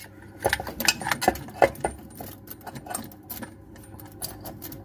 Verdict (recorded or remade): recorded